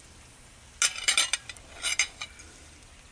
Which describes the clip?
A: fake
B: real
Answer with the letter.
B